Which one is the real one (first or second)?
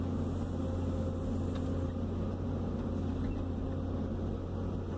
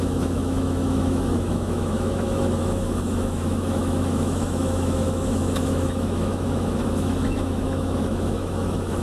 first